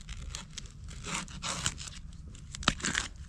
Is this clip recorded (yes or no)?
yes